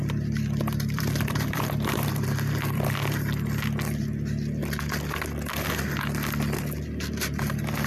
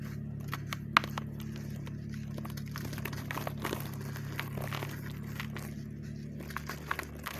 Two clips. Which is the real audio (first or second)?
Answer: second